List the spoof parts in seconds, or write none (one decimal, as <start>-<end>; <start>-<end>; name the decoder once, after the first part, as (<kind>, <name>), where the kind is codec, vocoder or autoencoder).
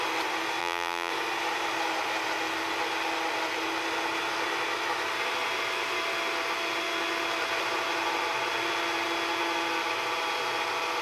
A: 0.6-1.1 (vocoder, BigVGAN v2)